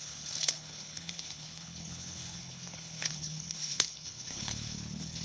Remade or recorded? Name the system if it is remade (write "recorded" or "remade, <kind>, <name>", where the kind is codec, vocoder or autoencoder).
remade, codec, HILCodec